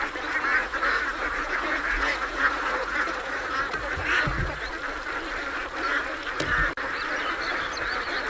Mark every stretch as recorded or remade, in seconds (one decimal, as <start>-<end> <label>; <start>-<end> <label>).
0.0-0.6 recorded; 0.6-4.7 remade; 4.7-8.3 recorded